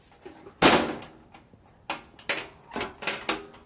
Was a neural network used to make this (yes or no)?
no